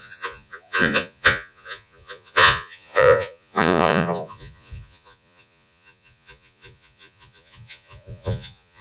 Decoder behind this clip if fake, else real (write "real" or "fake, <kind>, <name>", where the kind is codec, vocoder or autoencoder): fake, vocoder, Vocos